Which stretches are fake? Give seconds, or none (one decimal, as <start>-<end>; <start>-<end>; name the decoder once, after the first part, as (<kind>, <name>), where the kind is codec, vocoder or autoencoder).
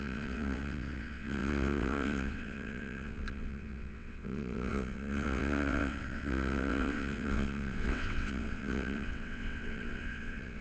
0.0-10.6 (vocoder, WaveNeXt)